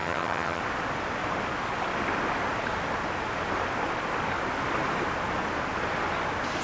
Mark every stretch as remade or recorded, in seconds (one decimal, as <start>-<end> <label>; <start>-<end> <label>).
0.0-0.6 remade; 0.6-6.6 recorded